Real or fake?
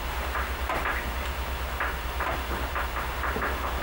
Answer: real